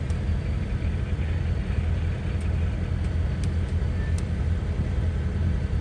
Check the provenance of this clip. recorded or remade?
recorded